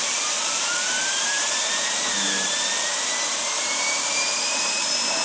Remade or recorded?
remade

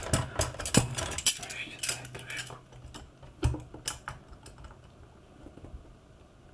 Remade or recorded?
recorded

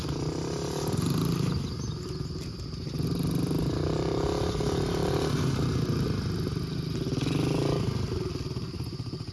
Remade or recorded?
recorded